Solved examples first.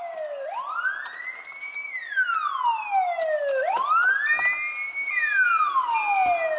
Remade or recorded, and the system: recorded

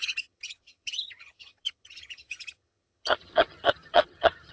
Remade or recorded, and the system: remade, vocoder, HiFi-GAN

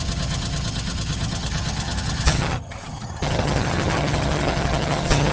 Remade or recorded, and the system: remade, vocoder, HiFi-GAN